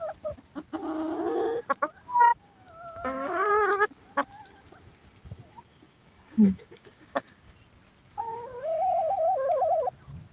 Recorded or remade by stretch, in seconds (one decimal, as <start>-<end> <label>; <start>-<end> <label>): 0.0-2.3 recorded; 2.3-3.5 remade; 3.5-5.7 recorded; 5.7-7.5 remade; 7.5-10.3 recorded